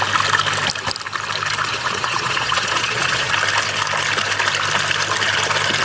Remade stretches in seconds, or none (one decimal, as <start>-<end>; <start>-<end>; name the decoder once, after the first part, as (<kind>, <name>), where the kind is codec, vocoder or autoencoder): 1.7-3.3 (vocoder, Vocos)